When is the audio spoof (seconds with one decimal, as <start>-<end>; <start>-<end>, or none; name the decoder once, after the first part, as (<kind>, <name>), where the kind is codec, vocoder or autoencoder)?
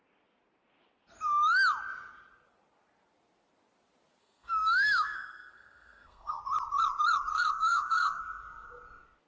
4.2-6.4 (codec, SNAC); 7.3-8.2